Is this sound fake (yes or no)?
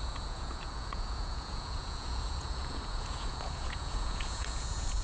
yes